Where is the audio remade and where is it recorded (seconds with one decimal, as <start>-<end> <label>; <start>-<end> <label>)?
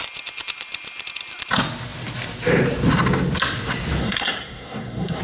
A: 0.0-4.0 recorded; 4.0-5.2 remade